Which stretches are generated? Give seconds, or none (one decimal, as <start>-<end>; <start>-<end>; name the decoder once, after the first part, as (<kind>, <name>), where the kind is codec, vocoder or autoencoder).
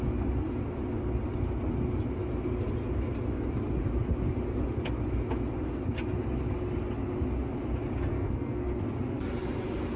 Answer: 8.1-8.8 (codec, SNAC)